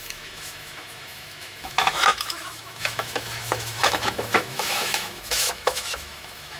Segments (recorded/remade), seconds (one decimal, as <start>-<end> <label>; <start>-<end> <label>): 0.0-6.6 remade